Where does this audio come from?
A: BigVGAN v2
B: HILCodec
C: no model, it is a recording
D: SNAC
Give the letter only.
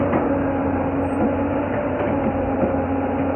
C